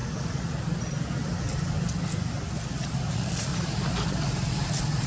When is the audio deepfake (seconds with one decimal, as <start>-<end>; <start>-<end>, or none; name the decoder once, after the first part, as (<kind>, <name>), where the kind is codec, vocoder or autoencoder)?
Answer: 3.1-3.5 (vocoder, Vocos)